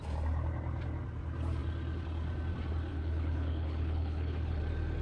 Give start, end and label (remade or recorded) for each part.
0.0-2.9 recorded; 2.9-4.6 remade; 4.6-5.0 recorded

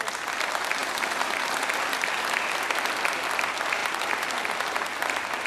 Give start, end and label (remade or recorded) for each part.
0.0-5.5 recorded

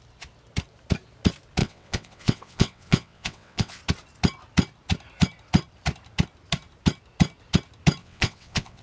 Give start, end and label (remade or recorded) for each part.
0.0-1.6 recorded; 1.6-3.8 remade; 3.8-8.0 recorded; 8.0-8.8 remade